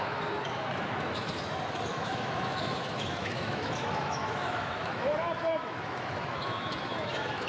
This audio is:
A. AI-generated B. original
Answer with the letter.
A